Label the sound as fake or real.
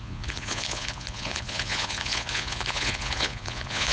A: fake